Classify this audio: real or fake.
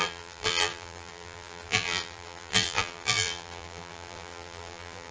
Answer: fake